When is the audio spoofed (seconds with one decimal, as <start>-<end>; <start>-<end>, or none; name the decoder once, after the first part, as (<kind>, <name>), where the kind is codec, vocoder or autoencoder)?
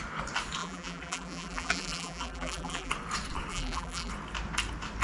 0.6-2.9 (vocoder, BigVGAN v2); 3.5-4.1